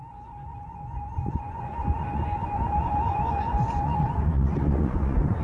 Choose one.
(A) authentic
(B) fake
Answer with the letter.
B